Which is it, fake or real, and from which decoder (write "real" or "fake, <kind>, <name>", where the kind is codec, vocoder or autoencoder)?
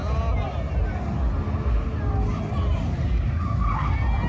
real